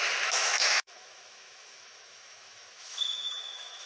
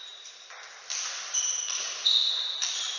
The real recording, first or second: second